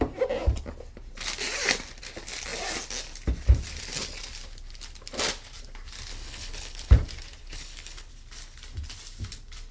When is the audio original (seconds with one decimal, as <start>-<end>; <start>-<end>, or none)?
0.0-6.1; 6.9-7.4; 8.1-9.7